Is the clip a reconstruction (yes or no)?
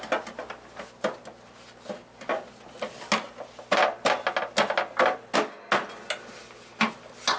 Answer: no